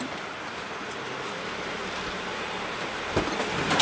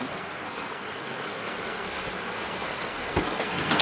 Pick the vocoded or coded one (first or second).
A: second